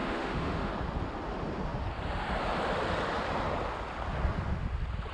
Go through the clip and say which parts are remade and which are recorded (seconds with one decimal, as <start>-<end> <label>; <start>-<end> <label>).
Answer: 0.0-0.7 remade; 0.7-5.1 recorded